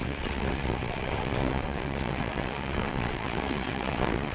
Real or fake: fake